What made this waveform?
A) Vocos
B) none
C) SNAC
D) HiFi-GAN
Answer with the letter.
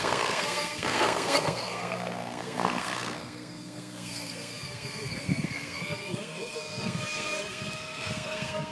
C